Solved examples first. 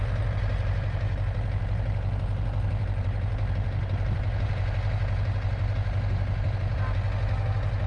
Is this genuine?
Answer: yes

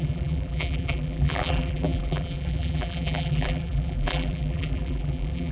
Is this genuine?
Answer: no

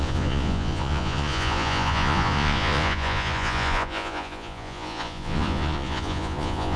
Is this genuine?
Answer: no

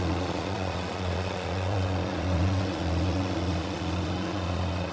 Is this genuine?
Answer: no